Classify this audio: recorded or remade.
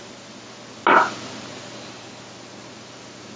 recorded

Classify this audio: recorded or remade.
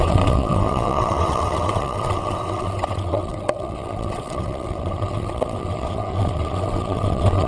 remade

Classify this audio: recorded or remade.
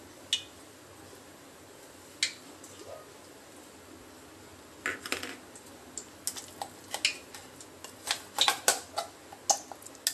recorded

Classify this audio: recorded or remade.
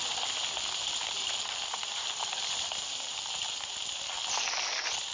recorded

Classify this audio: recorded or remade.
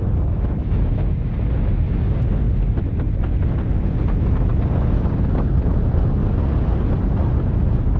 recorded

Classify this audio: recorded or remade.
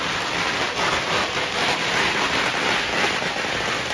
recorded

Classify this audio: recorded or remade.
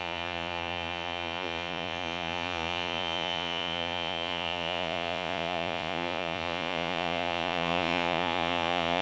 remade